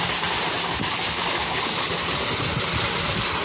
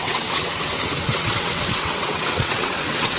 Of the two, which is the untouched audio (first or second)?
first